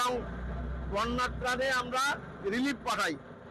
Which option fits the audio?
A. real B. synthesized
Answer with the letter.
A